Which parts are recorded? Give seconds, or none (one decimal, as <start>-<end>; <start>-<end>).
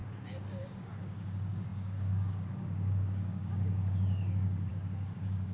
none